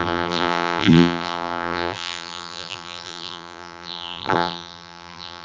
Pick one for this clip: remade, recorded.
remade